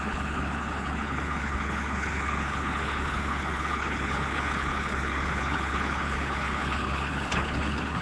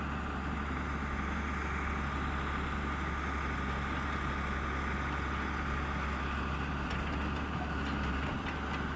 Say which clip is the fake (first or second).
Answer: first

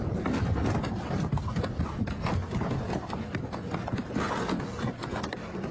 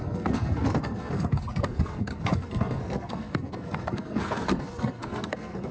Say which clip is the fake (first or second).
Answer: second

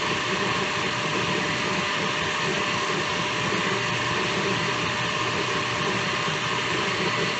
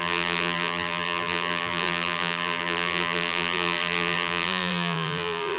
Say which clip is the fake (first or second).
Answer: second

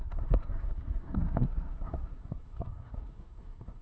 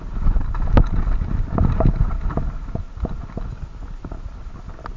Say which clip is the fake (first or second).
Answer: first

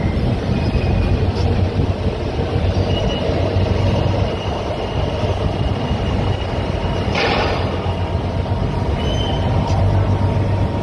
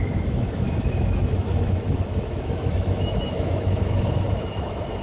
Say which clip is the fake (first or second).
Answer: second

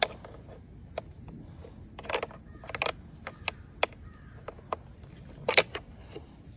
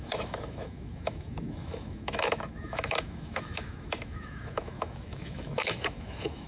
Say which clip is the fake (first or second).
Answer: second